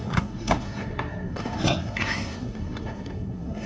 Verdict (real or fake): fake